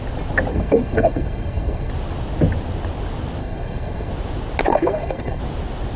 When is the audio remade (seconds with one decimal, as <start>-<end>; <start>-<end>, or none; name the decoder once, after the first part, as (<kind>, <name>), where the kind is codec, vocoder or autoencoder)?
0.5-1.9 (codec, SNAC); 3.4-4.1; 4.7-5.4